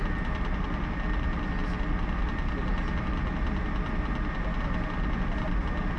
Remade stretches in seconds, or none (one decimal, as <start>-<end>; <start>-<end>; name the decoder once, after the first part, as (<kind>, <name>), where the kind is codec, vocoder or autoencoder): none